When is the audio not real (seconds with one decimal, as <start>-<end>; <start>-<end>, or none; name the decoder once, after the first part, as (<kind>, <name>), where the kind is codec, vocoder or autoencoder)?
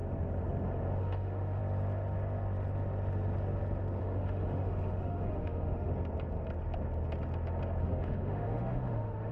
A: 1.0-1.6 (autoencoder, DAC-VAE); 4.0-5.9; 7.8-9.3